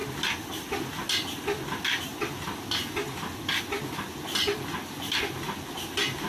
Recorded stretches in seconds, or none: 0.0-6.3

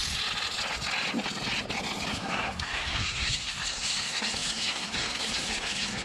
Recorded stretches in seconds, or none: 0.0-2.1

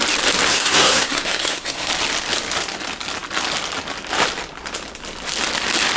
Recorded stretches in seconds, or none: 0.0-0.5; 1.9-6.0

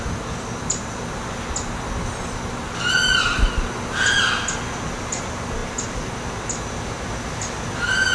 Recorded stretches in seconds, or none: 0.0-8.1

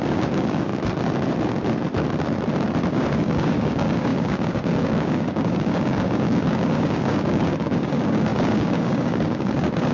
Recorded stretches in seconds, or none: 0.7-2.9